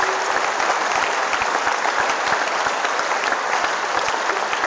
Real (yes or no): yes